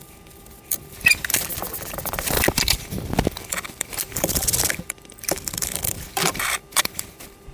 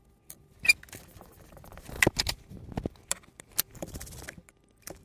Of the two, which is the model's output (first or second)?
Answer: first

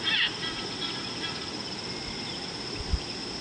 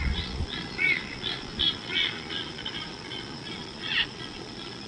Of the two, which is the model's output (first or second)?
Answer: second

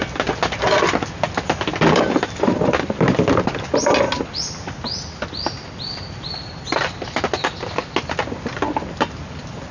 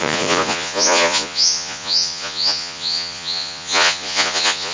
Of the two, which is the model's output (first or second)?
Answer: second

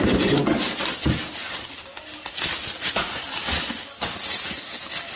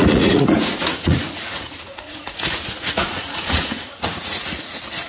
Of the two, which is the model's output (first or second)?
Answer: second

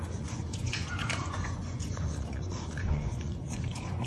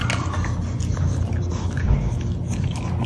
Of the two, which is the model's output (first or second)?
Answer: first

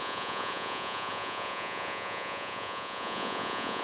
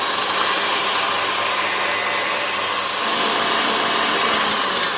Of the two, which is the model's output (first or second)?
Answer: first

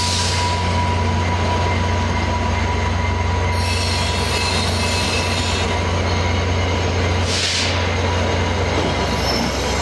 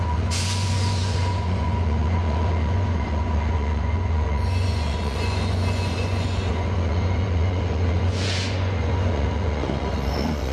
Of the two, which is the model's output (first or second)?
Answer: second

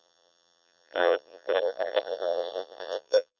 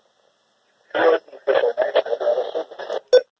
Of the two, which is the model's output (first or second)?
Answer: first